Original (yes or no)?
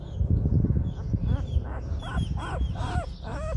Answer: yes